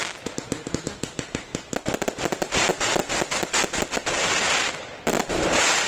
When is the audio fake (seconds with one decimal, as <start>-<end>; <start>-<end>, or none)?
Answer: none